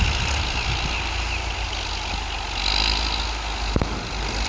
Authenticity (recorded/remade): recorded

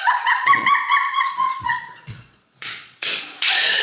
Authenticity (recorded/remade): remade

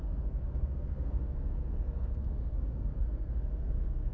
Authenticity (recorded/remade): remade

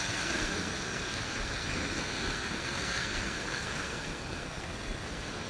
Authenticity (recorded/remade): remade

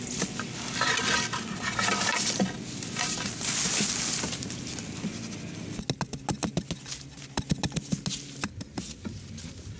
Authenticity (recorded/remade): recorded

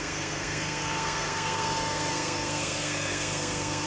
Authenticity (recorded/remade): remade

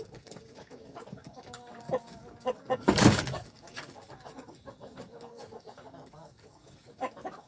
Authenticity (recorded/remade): remade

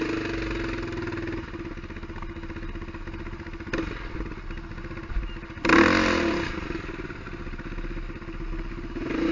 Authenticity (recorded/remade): recorded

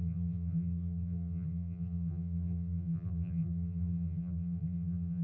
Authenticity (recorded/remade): remade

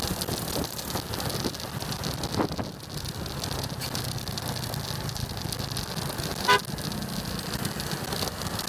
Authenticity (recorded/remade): recorded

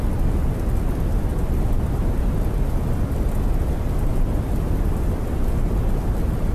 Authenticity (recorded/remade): recorded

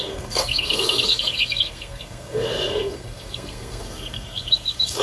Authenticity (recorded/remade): remade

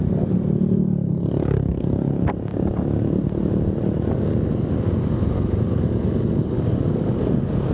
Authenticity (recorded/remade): recorded